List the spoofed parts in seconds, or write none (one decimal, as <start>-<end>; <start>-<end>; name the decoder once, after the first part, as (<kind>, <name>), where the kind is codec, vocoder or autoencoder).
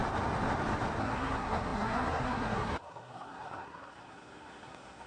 1.0-5.1 (codec, SNAC)